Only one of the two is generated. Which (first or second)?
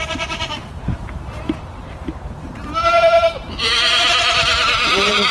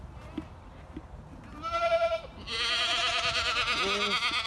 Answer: first